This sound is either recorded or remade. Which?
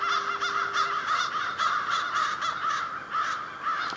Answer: recorded